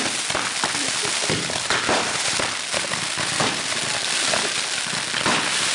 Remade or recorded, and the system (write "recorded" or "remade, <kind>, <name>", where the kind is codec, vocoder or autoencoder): recorded